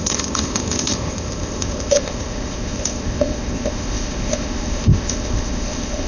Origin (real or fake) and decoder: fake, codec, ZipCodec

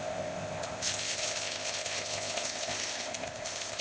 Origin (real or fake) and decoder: fake, codec, ZipCodec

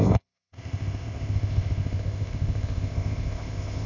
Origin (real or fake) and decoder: fake, codec, ZipCodec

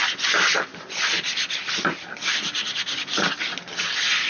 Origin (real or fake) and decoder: real